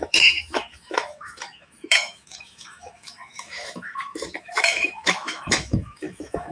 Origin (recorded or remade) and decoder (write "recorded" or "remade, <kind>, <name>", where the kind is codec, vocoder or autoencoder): remade, autoencoder, DAC-VAE